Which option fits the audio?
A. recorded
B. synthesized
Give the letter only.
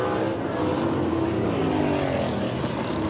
A